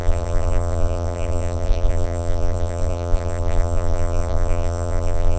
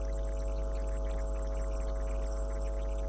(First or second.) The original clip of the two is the second